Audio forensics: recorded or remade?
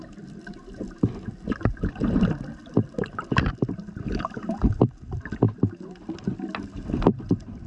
recorded